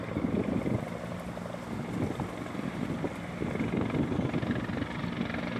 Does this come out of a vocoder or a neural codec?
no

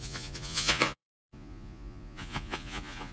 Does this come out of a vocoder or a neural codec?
yes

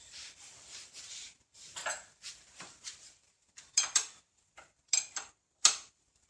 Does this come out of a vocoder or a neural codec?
yes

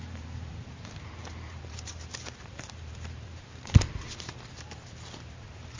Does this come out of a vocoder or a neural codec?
yes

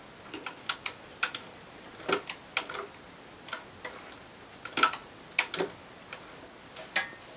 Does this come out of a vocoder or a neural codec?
no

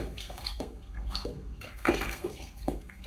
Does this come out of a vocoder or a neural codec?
yes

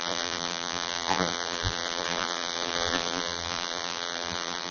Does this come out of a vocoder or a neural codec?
yes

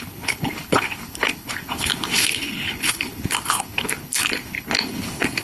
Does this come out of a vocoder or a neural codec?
yes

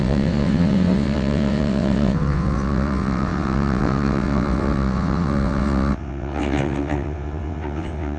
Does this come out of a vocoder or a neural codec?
yes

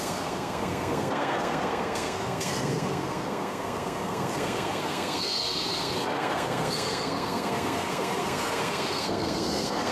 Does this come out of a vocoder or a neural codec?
yes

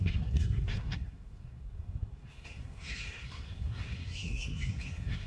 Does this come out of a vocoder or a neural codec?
yes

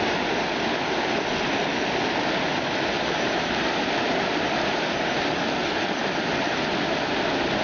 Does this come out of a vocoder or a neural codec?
no